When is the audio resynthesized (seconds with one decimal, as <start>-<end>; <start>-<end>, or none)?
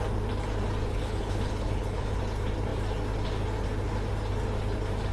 0.9-2.2